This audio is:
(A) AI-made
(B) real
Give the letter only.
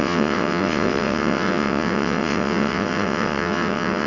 A